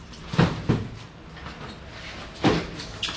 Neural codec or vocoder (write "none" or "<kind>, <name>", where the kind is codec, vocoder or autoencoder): none